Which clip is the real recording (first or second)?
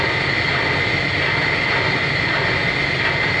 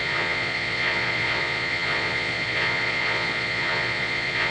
first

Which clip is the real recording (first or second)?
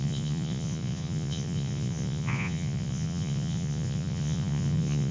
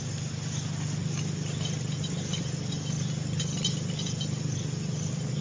second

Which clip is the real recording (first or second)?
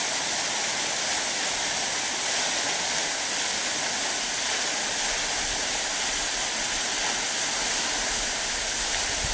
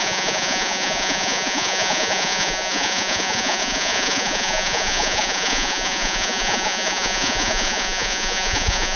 first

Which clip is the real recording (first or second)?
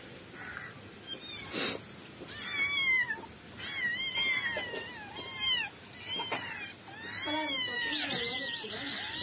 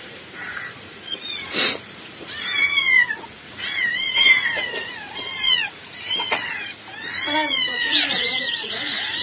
first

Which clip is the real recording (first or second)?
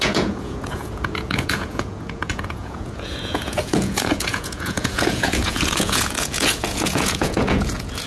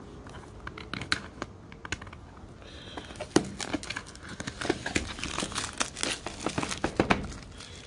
second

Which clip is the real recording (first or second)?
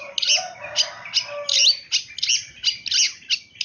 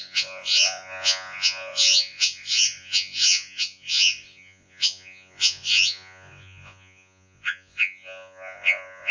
first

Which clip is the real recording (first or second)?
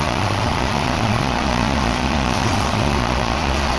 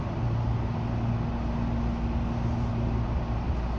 second